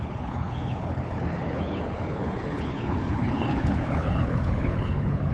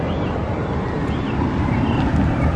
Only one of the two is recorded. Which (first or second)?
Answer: second